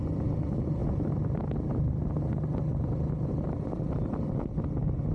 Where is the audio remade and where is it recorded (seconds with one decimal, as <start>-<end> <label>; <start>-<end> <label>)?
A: 0.0-5.1 recorded